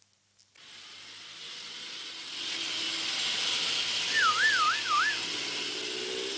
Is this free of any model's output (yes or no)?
yes